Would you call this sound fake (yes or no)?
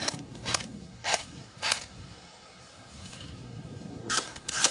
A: yes